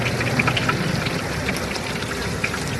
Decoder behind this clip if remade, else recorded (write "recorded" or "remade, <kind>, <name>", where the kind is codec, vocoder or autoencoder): recorded